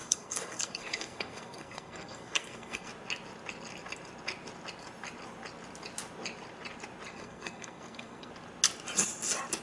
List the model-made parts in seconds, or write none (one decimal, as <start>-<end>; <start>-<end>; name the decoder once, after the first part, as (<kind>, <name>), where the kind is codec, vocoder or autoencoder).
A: 0.0-2.9 (codec, SNAC); 7.1-8.3